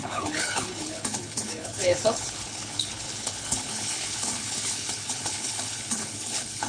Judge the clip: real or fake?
fake